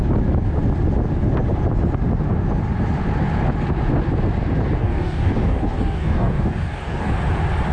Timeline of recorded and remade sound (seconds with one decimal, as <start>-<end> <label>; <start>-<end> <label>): 0.0-4.8 recorded; 4.8-7.1 remade; 7.1-7.7 recorded